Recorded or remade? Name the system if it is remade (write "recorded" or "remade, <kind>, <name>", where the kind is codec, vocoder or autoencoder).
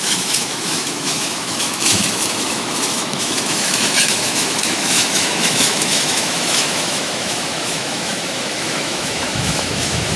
remade, autoencoder, DAC-VAE